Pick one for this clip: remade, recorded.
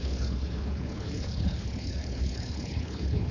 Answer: remade